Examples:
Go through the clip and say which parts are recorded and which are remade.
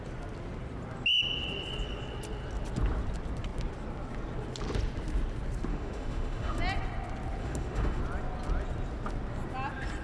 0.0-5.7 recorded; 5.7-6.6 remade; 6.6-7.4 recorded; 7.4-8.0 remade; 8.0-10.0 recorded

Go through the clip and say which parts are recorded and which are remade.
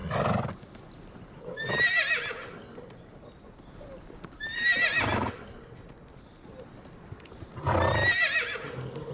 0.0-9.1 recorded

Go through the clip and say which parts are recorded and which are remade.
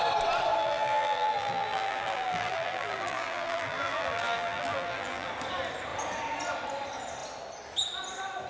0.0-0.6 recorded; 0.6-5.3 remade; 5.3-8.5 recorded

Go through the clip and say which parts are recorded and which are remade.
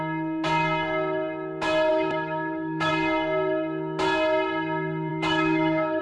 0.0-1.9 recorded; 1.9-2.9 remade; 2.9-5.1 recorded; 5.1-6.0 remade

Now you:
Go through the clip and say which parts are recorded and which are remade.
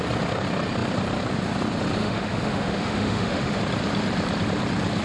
0.0-2.0 recorded; 2.0-3.6 remade; 3.6-5.0 recorded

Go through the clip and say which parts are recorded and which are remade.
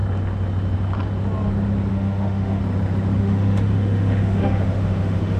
0.0-1.9 recorded; 1.9-2.6 remade; 2.6-3.2 recorded; 3.2-5.4 remade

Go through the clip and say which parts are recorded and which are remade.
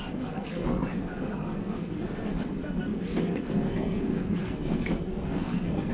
0.0-5.9 remade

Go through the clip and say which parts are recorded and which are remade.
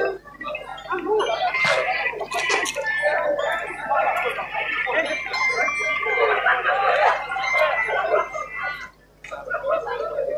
0.0-10.4 recorded